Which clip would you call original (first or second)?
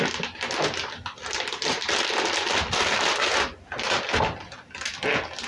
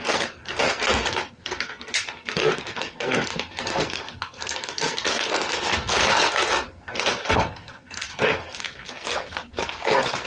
first